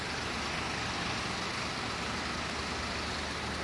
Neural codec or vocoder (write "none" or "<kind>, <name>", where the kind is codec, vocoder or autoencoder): none